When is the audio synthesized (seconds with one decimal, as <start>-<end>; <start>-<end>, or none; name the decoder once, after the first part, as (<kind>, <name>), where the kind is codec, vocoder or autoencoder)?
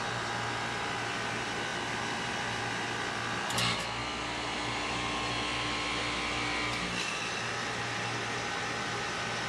none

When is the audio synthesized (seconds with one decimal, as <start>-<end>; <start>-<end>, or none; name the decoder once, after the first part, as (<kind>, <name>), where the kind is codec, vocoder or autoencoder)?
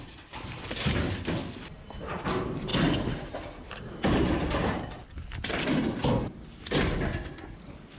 none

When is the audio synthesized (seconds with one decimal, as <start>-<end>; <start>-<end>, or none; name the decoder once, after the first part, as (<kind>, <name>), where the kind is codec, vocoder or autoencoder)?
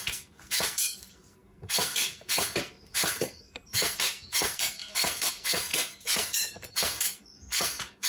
0.0-8.1 (codec, SNAC)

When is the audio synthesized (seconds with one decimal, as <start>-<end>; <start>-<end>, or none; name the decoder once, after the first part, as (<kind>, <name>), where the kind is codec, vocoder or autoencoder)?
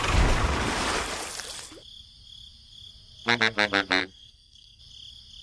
4.0-4.8 (codec, SNAC)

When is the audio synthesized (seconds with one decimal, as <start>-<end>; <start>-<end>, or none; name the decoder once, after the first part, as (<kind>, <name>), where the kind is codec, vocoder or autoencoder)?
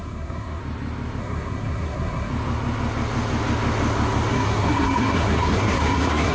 0.0-0.6 (codec, SNAC); 1.2-2.3; 4.3-6.3